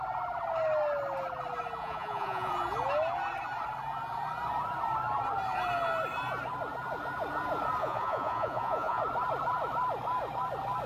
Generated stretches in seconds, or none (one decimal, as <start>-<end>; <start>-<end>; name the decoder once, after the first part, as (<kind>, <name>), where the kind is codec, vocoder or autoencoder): 1.8-2.5 (vocoder, Vocos); 7.8-9.0